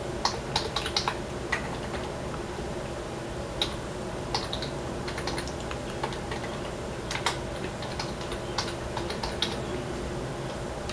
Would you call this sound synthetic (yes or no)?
no